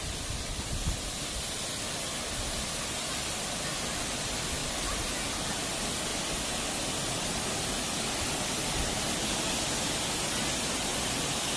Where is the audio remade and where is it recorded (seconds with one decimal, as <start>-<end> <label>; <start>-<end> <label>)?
0.0-4.6 recorded; 4.6-5.1 remade; 5.1-11.6 recorded